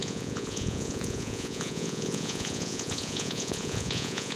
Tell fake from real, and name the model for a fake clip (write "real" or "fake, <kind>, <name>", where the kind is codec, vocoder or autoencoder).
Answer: fake, vocoder, Vocos